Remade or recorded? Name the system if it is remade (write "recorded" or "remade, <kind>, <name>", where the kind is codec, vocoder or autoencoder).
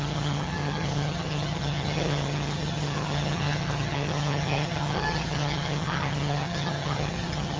remade, vocoder, HiFi-GAN